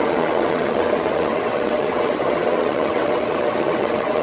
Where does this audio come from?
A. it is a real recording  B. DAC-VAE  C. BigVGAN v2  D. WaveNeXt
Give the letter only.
D